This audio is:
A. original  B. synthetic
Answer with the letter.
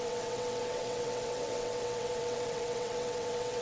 B